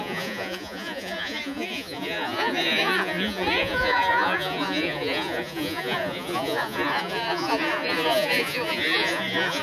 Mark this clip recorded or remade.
remade